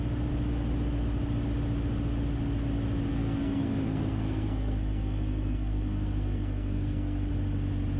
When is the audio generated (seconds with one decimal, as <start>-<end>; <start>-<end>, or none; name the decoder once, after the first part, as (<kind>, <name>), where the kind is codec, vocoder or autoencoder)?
3.1-7.3 (codec, SNAC)